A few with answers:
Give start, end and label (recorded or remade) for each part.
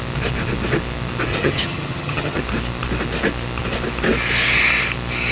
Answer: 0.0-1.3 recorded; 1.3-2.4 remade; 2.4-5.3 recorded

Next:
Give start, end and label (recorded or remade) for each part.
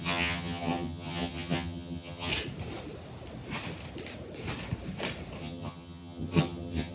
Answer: 0.0-2.3 remade; 2.3-5.4 recorded; 5.4-6.9 remade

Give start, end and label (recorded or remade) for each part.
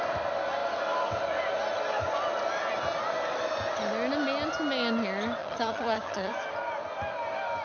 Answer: 0.0-5.4 recorded; 5.4-6.3 remade; 6.3-7.6 recorded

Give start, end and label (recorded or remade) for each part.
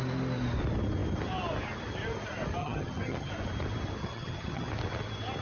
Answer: 0.0-2.6 recorded; 2.6-3.3 remade; 3.3-4.0 recorded; 4.0-4.7 remade; 4.7-5.4 recorded